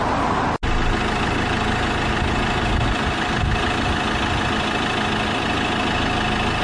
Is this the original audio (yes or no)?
yes